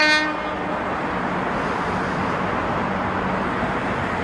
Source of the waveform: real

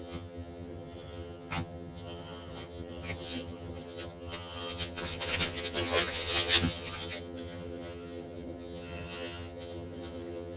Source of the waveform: fake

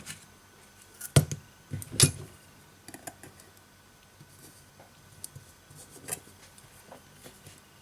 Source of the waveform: real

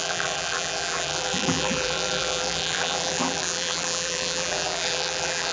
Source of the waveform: fake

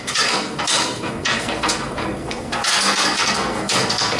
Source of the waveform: fake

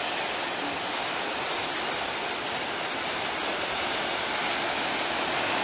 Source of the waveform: real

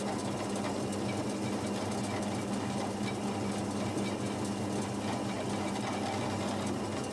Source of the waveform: real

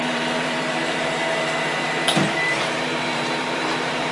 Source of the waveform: fake